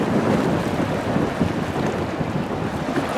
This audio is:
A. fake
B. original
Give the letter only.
B